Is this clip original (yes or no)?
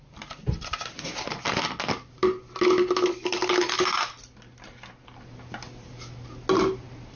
yes